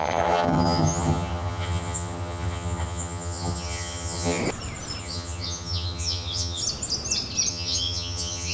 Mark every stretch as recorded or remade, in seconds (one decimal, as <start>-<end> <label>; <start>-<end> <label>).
0.0-4.4 remade; 4.4-5.0 recorded; 5.0-6.6 remade; 6.6-7.5 recorded; 7.5-8.5 remade